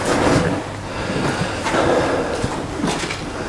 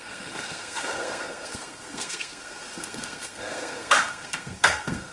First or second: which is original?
first